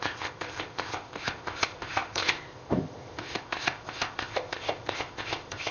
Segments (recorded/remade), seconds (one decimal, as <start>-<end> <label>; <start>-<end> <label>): 0.0-5.7 remade